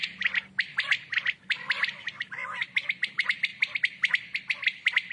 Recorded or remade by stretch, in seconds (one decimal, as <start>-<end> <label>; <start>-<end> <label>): 0.0-3.1 recorded; 3.1-3.5 remade; 3.5-5.1 recorded